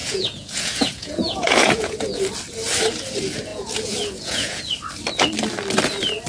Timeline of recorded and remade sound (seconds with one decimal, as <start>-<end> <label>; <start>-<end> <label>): 0.0-2.2 remade; 2.2-3.5 recorded; 3.5-4.6 remade; 4.6-6.3 recorded